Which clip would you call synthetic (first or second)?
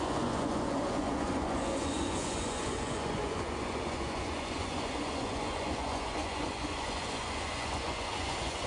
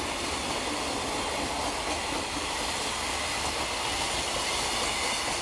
first